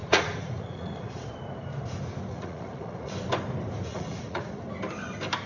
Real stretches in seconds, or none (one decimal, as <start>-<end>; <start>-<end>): 1.3-2.3; 3.1-3.9; 4.6-5.5